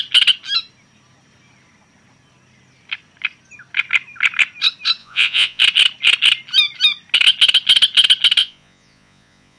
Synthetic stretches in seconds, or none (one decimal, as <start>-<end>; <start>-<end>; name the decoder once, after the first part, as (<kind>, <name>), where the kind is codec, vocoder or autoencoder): 5.0-5.6 (vocoder, Vocos); 8.4-9.6